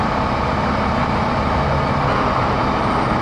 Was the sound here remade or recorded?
recorded